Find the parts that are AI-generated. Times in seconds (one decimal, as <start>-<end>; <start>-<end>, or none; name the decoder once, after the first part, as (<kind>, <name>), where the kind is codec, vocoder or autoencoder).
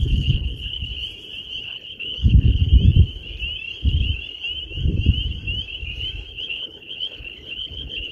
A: 0.0-0.9 (codec, HILCodec); 1.6-2.7; 6.3-8.1